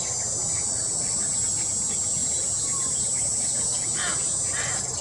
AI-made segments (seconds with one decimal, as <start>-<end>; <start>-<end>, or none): none